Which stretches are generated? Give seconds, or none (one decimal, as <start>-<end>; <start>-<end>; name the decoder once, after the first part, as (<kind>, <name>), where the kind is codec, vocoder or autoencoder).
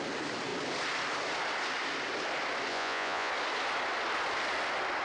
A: 2.7-3.3 (vocoder, Vocos)